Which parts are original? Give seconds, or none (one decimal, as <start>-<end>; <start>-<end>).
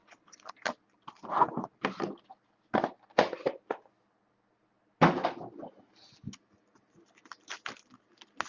0.5-8.5